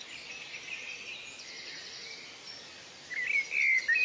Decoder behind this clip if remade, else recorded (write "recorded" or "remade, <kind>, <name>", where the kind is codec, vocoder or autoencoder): recorded